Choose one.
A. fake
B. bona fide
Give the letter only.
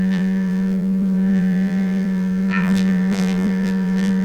A